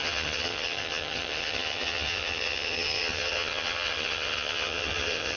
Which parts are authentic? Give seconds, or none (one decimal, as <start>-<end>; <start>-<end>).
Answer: none